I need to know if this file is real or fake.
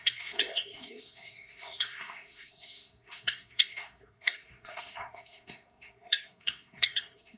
fake